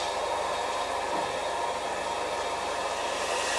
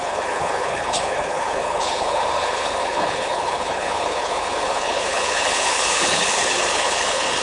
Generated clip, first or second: second